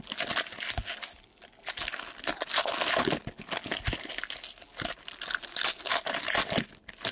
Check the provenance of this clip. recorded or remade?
recorded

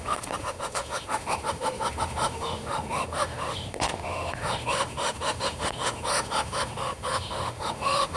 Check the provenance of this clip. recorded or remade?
remade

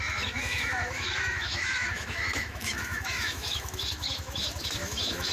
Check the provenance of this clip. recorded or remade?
remade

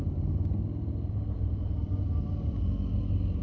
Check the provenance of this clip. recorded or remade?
recorded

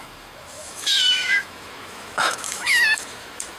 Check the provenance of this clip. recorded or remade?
remade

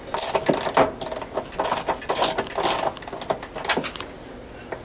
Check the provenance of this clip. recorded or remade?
recorded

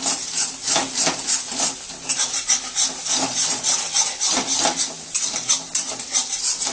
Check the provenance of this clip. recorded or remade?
recorded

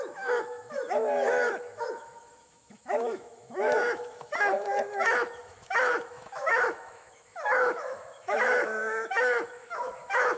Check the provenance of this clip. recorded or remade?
remade